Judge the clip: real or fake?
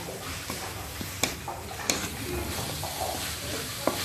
real